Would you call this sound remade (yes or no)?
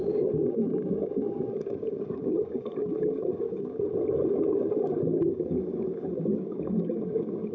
yes